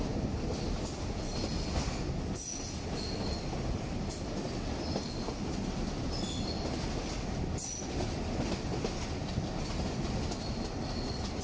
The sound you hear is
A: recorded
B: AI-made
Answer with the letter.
A